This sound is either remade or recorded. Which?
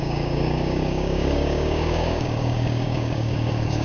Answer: remade